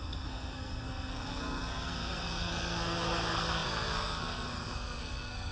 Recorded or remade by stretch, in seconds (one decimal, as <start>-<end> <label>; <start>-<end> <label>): 0.0-5.5 remade